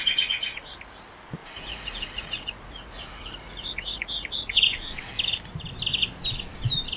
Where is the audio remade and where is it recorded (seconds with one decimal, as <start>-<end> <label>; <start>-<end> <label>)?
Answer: 0.0-0.7 remade; 0.7-1.4 recorded; 1.4-5.1 remade; 5.1-7.0 recorded